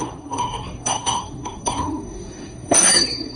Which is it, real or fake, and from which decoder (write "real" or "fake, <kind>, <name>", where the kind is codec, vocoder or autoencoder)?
fake, codec, SNAC